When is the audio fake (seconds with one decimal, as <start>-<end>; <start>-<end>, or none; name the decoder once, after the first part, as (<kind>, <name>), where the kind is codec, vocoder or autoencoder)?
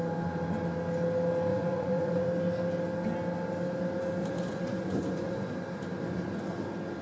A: 1.5-2.3 (vocoder, Vocos); 4.2-5.5